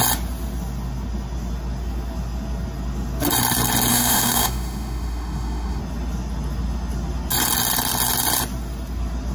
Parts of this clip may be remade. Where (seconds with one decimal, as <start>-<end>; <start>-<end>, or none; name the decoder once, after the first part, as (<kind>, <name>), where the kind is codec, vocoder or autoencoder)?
3.9-5.8 (autoencoder, DAC-VAE)